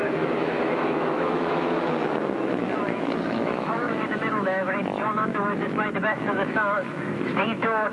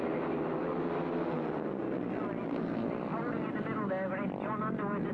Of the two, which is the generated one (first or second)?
first